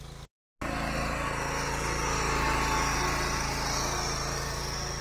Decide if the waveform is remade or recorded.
recorded